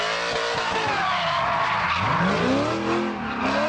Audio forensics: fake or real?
real